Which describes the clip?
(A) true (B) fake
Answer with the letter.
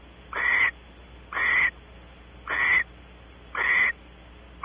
A